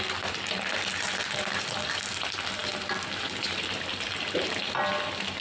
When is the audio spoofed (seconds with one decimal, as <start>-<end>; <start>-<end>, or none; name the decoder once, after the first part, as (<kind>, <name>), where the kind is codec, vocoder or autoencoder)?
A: 2.6-4.6 (vocoder, BigVGAN v2)